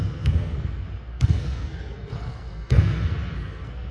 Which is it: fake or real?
fake